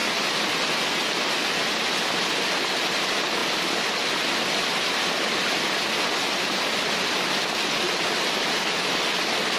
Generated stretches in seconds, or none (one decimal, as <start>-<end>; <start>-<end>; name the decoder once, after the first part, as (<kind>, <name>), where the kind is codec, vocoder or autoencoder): none